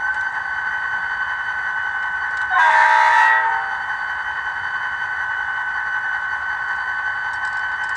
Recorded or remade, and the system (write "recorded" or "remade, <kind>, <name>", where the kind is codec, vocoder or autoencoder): recorded